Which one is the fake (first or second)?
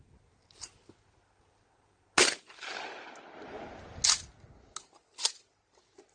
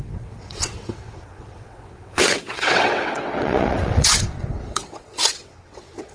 second